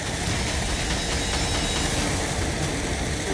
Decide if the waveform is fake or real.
real